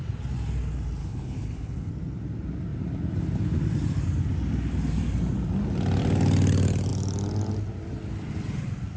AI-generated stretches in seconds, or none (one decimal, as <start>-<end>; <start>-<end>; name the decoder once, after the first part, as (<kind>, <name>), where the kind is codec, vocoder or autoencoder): 1.0-1.9 (codec, HILCodec)